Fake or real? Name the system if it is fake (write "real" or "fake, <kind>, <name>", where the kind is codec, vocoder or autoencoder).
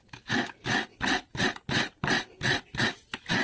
real